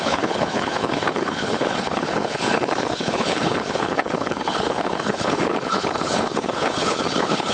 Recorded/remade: remade